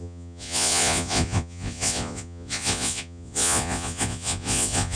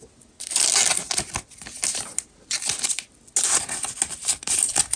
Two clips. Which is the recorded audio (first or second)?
second